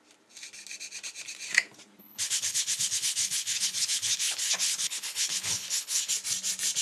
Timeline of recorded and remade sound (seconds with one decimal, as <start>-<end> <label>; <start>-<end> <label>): 0.0-2.0 recorded; 2.0-6.1 remade; 6.1-6.8 recorded